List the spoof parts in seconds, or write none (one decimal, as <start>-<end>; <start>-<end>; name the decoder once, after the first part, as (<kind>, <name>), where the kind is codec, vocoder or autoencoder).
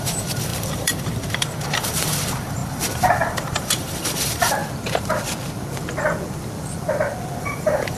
0.0-4.6 (vocoder, BigVGAN v2); 7.4-8.0